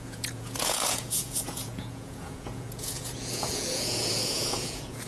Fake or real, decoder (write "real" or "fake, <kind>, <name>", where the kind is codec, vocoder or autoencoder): fake, vocoder, Vocos